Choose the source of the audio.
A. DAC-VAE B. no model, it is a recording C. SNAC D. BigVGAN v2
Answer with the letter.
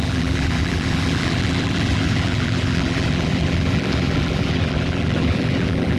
D